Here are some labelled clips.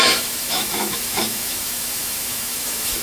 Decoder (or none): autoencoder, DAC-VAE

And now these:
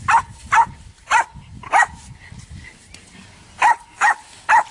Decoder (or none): none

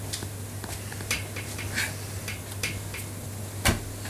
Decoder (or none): none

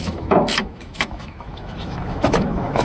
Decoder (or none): autoencoder, DAC-VAE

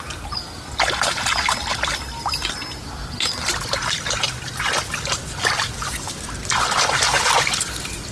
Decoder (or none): none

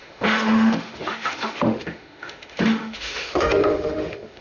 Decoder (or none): autoencoder, DAC-VAE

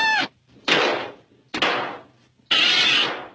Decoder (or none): none